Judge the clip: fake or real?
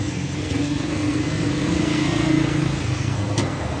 fake